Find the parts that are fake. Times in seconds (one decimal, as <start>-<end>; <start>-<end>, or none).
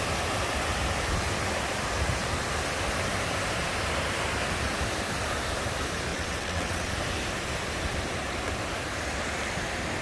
6.1-6.9